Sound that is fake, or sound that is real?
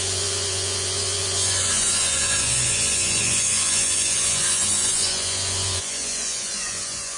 fake